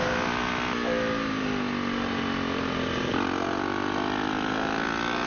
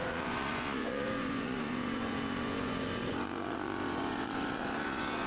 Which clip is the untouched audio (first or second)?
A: first